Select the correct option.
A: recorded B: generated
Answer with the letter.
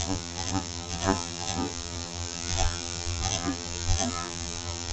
B